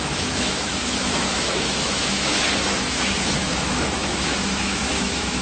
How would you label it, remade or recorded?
remade